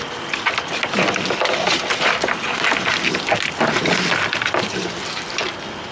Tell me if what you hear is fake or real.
real